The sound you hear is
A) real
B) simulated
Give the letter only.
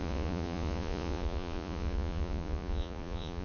B